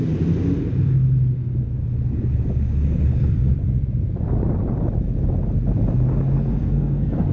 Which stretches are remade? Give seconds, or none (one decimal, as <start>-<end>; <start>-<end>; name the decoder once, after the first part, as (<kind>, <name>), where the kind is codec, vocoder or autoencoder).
6.6-7.3 (codec, SNAC)